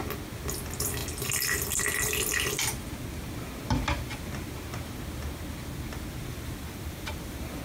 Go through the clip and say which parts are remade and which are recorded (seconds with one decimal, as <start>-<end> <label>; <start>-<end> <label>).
0.0-6.3 recorded; 6.3-7.6 remade